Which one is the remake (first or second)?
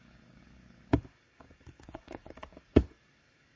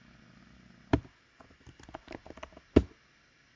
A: first